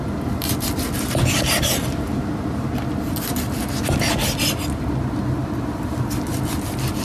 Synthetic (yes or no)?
no